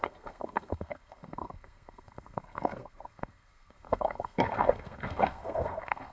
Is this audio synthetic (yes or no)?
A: yes